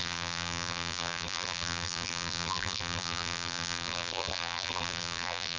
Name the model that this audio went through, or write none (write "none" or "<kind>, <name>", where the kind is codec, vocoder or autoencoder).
vocoder, BigVGAN v2